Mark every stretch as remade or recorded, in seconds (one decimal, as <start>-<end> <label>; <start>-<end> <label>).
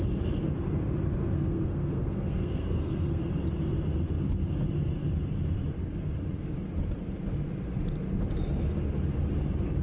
0.0-1.2 recorded; 1.2-3.2 remade; 3.2-9.8 recorded